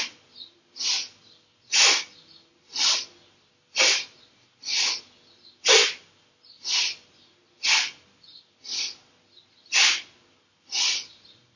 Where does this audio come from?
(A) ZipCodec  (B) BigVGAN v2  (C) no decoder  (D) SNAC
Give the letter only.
C